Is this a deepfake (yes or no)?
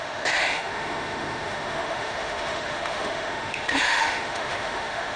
yes